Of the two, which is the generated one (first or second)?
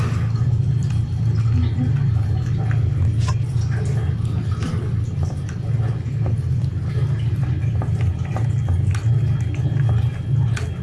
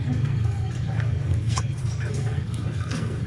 second